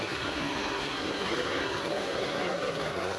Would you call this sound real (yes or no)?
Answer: no